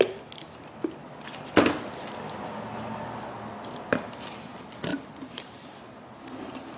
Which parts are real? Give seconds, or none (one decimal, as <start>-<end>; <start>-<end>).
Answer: 0.0-4.9; 5.7-6.8